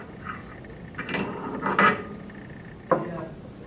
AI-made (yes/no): no